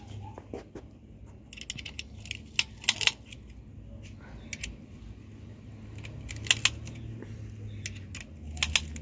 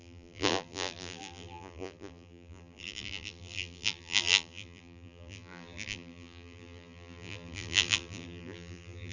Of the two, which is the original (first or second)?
first